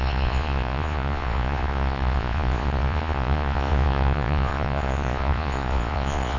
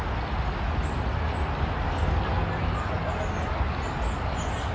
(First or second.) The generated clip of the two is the first